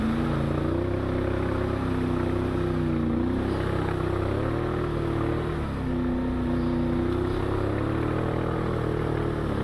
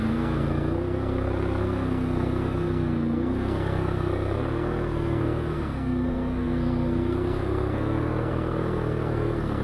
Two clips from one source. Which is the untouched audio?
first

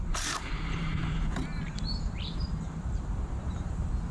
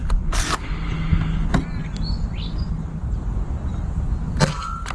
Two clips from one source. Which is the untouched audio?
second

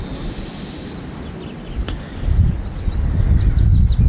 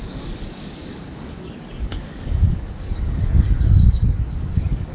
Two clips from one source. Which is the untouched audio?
first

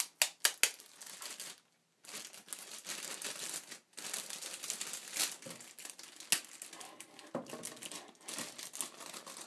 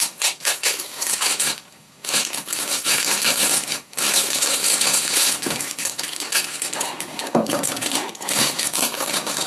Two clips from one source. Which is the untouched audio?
first